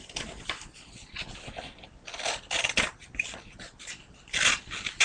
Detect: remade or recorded recorded